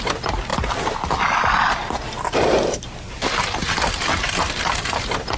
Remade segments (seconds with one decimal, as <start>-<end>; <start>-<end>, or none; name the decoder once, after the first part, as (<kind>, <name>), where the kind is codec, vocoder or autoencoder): 0.0-0.5 (vocoder, BigVGAN v2); 3.7-5.4